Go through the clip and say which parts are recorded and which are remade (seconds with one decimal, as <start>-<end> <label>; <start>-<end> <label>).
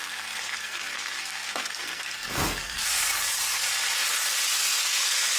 0.0-3.1 remade; 3.1-4.5 recorded; 4.5-5.4 remade